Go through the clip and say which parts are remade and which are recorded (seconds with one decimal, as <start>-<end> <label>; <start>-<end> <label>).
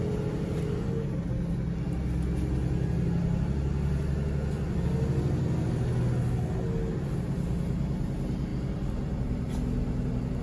0.0-10.4 recorded